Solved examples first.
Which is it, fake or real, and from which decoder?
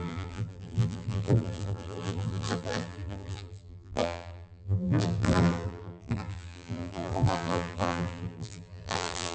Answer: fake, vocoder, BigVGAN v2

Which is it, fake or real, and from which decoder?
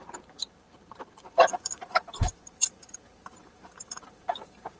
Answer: fake, vocoder, BigVGAN v2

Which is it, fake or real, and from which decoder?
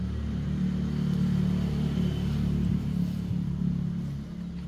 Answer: real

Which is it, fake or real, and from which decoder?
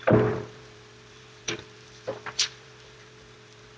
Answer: fake, vocoder, BigVGAN v2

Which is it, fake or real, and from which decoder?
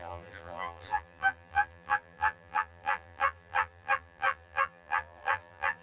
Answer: fake, vocoder, BigVGAN v2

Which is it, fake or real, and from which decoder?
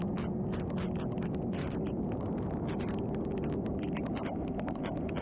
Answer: real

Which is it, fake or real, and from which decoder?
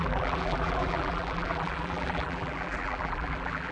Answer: fake, vocoder, BigVGAN v2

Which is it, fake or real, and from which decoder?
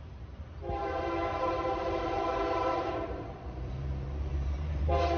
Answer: fake, vocoder, BigVGAN v2